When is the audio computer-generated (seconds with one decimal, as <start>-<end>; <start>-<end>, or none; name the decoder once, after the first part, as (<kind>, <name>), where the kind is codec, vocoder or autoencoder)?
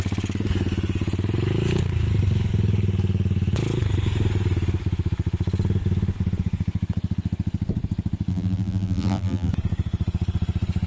8.3-9.5 (vocoder, BigVGAN v2)